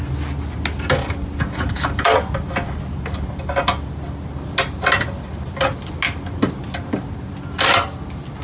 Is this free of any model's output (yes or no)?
yes